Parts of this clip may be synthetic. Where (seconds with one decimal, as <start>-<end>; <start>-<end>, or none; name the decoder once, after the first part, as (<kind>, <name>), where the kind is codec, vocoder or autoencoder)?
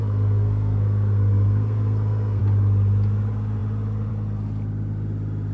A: 0.0-2.4 (codec, SNAC)